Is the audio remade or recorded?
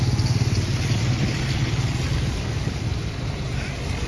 recorded